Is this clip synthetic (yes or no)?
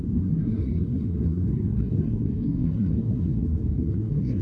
yes